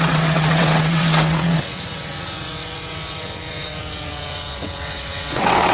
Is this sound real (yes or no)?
no